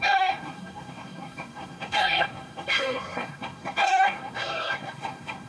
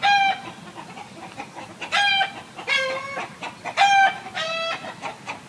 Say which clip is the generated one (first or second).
first